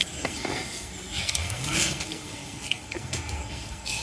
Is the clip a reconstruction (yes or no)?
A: yes